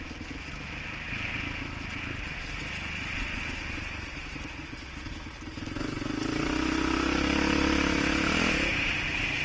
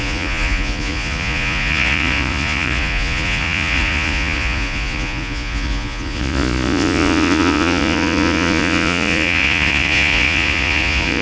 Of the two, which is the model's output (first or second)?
second